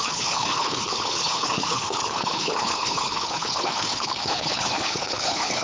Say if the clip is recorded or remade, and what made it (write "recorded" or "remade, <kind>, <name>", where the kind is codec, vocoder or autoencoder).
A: remade, codec, HILCodec